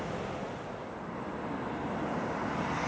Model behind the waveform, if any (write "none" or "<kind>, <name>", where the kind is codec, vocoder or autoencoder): none